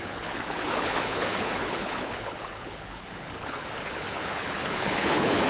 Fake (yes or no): yes